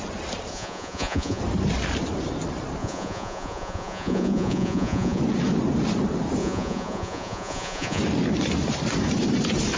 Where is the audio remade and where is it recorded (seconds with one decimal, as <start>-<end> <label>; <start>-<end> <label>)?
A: 0.0-0.5 recorded; 0.5-1.4 remade; 1.4-2.8 recorded; 2.8-5.2 remade; 5.2-6.4 recorded; 6.4-8.0 remade; 8.0-9.8 recorded